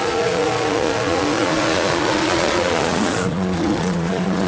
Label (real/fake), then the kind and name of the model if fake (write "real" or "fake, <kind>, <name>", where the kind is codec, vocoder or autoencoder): fake, vocoder, Vocos